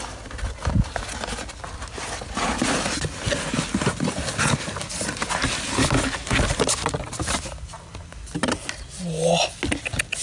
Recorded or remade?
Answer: recorded